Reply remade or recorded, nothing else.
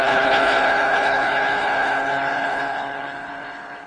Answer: remade